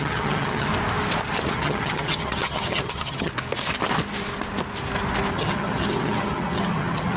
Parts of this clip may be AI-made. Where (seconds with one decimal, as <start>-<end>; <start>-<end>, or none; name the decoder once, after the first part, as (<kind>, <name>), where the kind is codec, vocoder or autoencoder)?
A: 0.0-0.7 (vocoder, HiFi-GAN); 1.5-3.3; 5.3-7.2